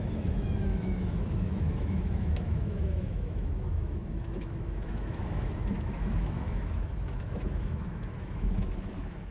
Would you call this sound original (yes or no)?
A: no